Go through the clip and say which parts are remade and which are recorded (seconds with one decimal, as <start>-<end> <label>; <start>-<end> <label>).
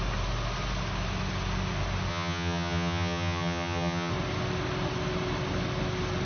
0.0-2.1 recorded; 2.1-4.1 remade; 4.1-6.2 recorded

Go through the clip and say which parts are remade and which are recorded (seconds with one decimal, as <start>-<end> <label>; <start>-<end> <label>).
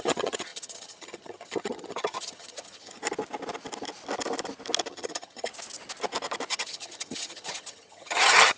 0.0-3.0 remade; 3.0-4.9 recorded; 4.9-5.5 remade; 5.5-6.5 recorded; 6.5-8.6 remade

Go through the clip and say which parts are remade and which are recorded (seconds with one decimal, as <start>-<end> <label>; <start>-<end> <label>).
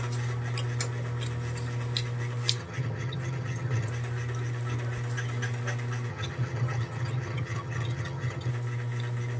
0.0-2.6 recorded; 2.6-3.9 remade; 3.9-6.1 recorded; 6.1-8.5 remade; 8.5-9.4 recorded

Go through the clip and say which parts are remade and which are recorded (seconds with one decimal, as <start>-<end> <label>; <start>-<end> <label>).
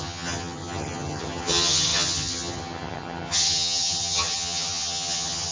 0.0-5.5 remade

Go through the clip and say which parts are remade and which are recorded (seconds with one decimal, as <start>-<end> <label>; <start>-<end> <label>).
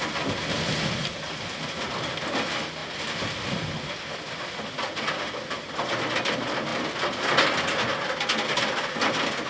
0.0-9.5 recorded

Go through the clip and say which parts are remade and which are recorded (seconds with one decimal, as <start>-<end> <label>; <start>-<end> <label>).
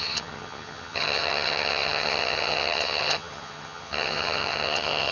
0.0-5.1 remade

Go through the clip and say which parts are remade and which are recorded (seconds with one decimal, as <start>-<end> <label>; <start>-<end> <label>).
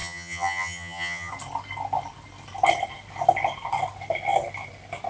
0.0-1.3 remade; 1.3-5.1 recorded